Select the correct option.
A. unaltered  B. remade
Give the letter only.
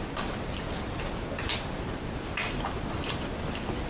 A